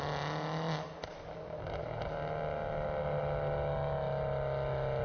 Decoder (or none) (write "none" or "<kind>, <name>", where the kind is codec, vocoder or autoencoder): none